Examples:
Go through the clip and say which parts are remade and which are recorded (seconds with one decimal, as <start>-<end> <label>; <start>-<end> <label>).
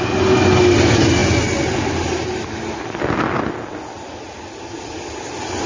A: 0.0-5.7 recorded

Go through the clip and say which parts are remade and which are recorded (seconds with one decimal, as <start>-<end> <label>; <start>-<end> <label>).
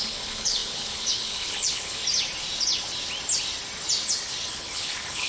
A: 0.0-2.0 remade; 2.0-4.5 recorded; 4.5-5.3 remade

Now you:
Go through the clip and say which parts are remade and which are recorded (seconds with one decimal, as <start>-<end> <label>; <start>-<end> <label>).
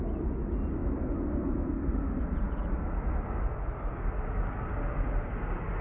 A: 0.0-5.8 recorded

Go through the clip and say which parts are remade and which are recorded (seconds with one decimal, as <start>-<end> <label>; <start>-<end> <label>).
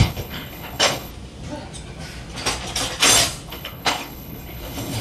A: 0.0-1.1 remade; 1.1-3.5 recorded; 3.5-5.0 remade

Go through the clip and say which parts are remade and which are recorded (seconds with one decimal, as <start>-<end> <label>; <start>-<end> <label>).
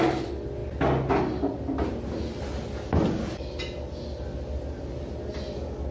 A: 0.0-5.9 recorded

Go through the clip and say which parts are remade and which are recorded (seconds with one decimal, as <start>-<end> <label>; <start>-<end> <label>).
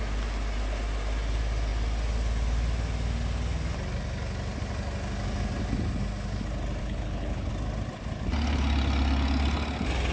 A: 0.0-6.8 recorded; 6.8-7.5 remade; 7.5-10.1 recorded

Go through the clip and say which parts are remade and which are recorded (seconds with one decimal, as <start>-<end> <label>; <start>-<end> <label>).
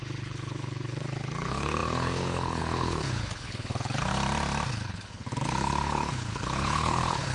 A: 0.0-4.1 remade; 4.1-4.7 recorded; 4.7-7.3 remade